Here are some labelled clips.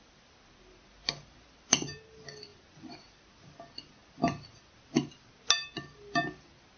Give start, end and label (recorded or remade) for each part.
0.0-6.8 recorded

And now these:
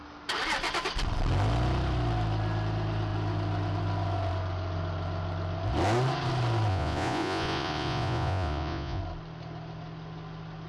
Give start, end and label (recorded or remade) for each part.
0.0-6.7 recorded; 6.7-9.0 remade; 9.0-10.7 recorded

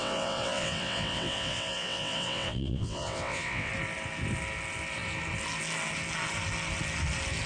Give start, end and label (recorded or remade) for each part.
0.0-3.7 remade; 3.7-7.5 recorded

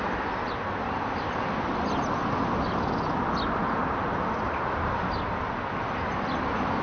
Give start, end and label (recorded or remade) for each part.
0.0-6.8 recorded

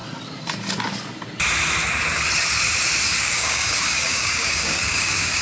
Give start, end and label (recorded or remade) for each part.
0.0-3.2 recorded; 3.2-5.4 remade

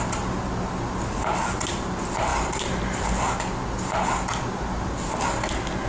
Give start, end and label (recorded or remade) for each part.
0.0-5.9 recorded

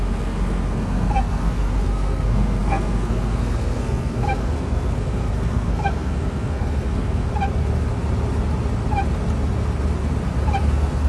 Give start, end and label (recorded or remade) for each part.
0.0-7.3 remade; 7.3-10.6 recorded; 10.6-11.1 remade